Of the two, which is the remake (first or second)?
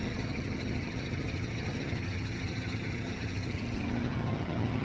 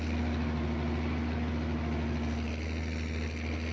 first